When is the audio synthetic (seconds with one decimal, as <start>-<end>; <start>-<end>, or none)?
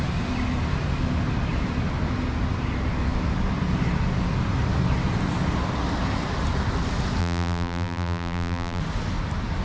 7.2-8.8